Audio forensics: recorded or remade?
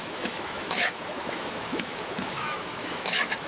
remade